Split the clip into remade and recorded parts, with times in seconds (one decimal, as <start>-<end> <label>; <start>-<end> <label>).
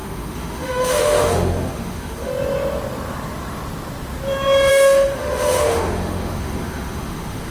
0.0-2.3 remade; 2.3-4.7 recorded; 4.7-7.5 remade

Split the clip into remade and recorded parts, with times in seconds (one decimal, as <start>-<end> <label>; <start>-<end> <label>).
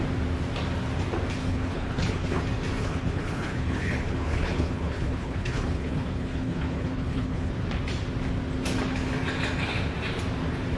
0.0-1.4 recorded; 1.4-2.4 remade; 2.4-2.8 recorded; 2.8-7.5 remade; 7.5-10.8 recorded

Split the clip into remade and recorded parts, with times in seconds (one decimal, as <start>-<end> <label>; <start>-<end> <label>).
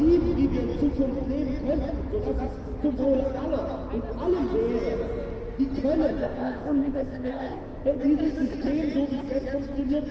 0.0-6.2 recorded; 6.2-8.0 remade; 8.0-10.1 recorded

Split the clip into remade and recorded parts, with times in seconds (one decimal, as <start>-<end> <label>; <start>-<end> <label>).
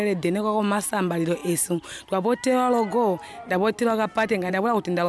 0.0-5.1 recorded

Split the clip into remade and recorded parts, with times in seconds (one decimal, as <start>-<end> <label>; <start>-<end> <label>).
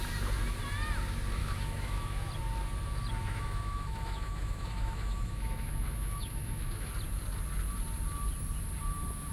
0.0-1.4 recorded; 1.4-2.3 remade; 2.3-3.2 recorded; 3.2-6.9 remade; 6.9-9.3 recorded